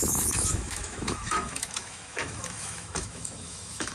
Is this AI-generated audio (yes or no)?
yes